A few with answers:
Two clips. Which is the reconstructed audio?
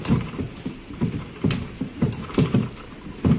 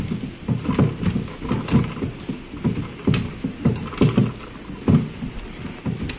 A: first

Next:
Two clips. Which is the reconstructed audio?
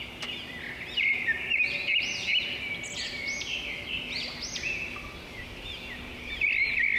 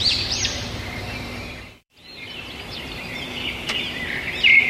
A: second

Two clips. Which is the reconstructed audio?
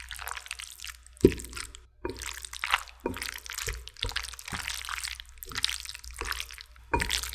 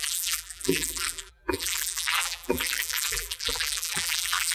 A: second